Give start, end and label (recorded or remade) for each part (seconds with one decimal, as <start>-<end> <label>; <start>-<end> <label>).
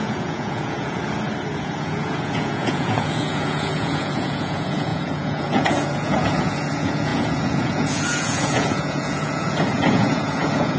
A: 0.0-1.0 remade; 1.0-1.6 recorded; 1.6-10.8 remade